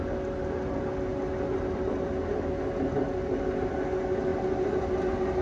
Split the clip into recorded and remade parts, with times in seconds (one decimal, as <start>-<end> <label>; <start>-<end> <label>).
0.0-5.4 recorded